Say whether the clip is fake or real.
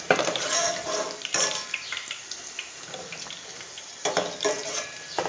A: fake